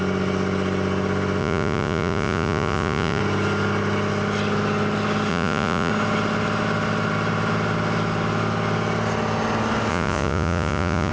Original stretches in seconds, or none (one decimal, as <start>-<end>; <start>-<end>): 0.0-1.4; 3.2-5.3; 5.9-9.9